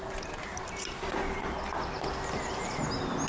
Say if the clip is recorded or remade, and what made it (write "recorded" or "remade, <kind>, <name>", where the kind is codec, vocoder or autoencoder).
recorded